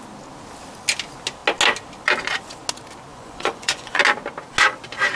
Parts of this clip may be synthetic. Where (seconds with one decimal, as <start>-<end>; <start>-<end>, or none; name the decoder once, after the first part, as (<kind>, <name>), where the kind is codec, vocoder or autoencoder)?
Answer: 3.1-4.0 (vocoder, Vocos)